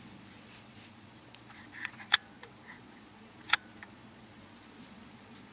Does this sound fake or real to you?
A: fake